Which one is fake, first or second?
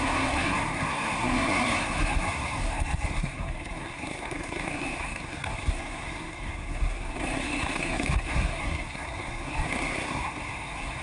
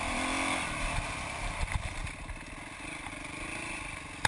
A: first